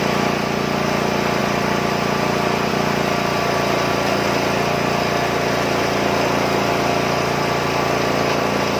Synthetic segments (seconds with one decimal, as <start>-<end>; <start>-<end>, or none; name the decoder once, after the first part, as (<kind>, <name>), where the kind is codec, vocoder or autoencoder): none